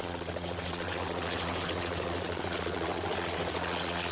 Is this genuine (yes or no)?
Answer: no